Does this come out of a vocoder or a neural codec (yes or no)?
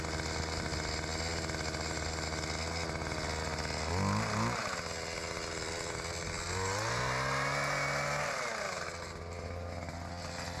no